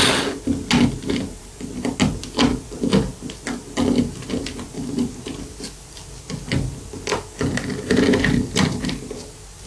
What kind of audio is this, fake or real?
real